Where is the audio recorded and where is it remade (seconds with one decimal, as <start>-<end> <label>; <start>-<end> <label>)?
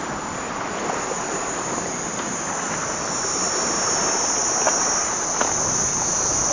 0.0-6.5 recorded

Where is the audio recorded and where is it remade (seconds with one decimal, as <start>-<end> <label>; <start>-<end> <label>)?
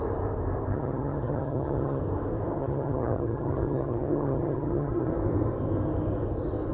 0.0-0.7 recorded; 0.7-2.0 remade; 2.0-2.6 recorded; 2.6-5.1 remade; 5.1-6.7 recorded